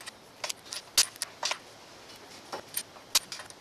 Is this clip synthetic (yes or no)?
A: no